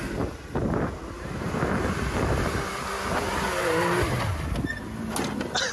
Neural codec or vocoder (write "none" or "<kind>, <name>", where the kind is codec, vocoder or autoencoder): none